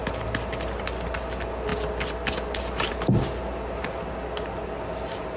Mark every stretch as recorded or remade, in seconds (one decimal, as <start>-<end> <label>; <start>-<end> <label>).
0.0-5.4 recorded